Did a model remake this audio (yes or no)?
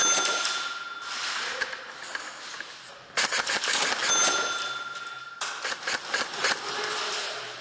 no